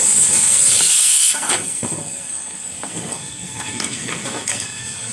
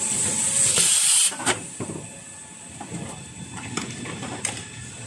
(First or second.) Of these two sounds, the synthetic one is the first